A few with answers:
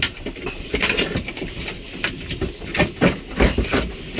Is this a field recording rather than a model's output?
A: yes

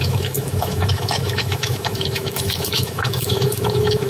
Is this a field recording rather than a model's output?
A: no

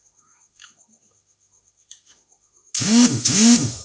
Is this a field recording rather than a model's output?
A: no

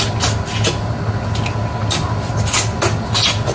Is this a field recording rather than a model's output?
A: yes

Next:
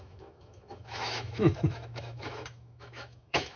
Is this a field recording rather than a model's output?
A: no